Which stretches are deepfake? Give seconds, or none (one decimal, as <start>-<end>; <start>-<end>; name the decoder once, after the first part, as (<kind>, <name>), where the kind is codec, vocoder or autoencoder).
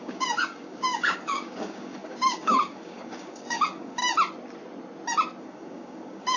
0.0-4.0 (codec, DAC); 5.4-6.4